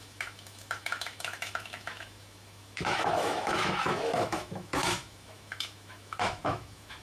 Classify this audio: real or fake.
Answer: fake